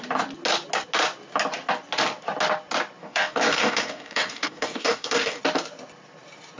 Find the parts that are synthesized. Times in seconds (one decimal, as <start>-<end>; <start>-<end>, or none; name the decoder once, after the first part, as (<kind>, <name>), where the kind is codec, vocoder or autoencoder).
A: 3.0-5.4 (codec, DAC)